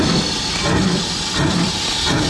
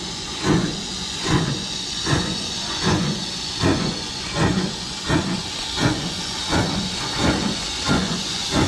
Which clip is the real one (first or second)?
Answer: first